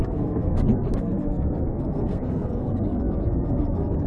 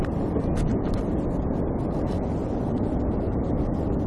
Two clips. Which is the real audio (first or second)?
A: second